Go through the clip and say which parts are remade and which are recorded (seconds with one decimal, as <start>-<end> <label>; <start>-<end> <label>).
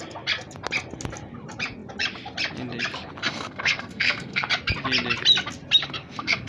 0.0-3.2 recorded; 3.2-4.5 remade; 4.5-5.8 recorded; 5.8-6.5 remade